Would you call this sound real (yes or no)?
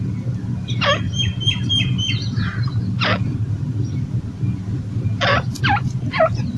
yes